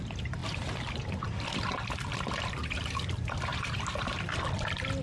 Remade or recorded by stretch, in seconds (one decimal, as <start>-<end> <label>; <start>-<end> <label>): 0.0-2.6 recorded; 2.6-3.1 remade; 3.1-3.5 recorded; 3.5-4.2 remade; 4.2-5.0 recorded